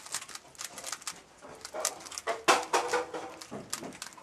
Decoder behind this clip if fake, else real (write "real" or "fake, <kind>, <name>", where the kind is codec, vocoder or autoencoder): real